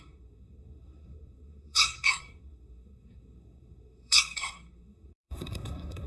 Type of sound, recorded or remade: remade